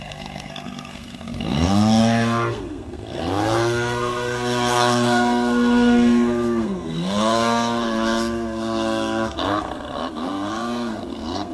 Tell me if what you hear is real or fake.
fake